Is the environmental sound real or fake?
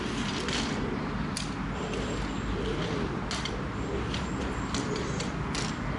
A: real